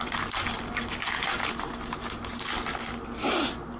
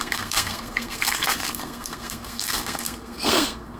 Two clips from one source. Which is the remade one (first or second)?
second